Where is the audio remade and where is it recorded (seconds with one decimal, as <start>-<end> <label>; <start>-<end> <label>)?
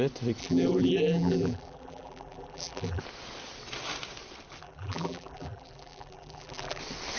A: 0.0-0.4 recorded; 0.4-3.0 remade; 3.0-4.6 recorded; 4.6-6.8 remade; 6.8-7.2 recorded